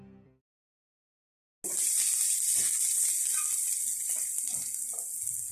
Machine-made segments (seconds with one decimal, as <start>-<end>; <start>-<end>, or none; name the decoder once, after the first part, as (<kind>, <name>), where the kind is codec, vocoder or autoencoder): none